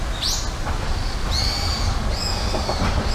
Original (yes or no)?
yes